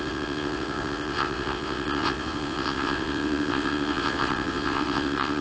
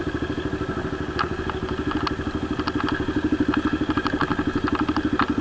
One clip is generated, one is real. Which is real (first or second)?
second